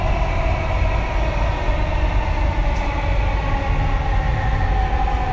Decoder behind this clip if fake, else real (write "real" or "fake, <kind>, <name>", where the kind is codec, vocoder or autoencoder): real